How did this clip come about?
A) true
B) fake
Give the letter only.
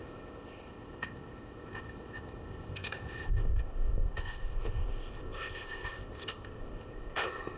B